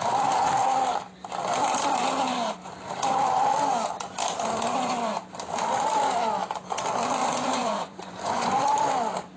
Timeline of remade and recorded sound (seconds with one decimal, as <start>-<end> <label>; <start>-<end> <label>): 0.0-7.2 recorded; 7.2-8.6 remade; 8.6-9.4 recorded